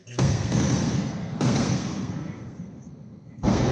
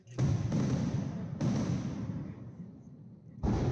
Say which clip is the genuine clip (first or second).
second